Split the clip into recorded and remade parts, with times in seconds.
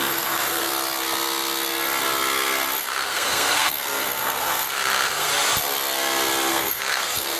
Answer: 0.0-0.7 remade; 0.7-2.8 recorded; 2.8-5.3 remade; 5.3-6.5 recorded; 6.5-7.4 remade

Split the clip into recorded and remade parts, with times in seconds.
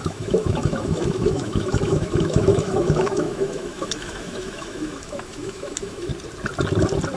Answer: 0.0-6.1 remade; 6.1-7.2 recorded